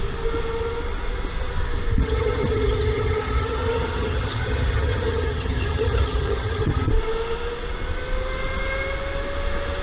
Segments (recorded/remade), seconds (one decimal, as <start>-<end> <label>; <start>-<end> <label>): 0.0-2.0 recorded; 2.0-6.9 remade; 6.9-9.8 recorded